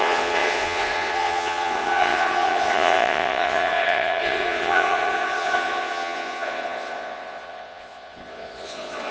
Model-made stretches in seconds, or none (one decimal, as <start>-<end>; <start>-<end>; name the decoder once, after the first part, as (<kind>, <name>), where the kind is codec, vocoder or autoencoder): 0.0-9.1 (vocoder, Vocos)